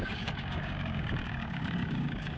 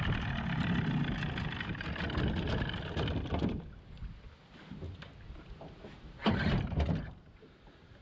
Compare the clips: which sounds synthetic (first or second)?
first